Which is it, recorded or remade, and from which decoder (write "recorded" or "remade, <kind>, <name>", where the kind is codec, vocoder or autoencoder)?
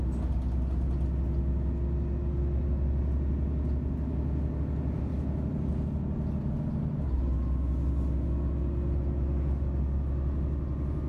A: recorded